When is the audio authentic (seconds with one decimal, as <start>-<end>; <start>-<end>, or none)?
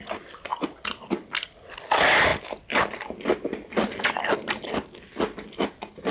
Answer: 0.0-6.1